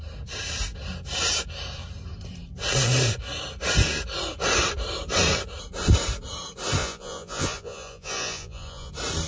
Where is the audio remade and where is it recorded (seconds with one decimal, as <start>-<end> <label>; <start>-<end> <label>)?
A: 0.0-6.8 recorded; 6.8-8.9 remade; 8.9-9.3 recorded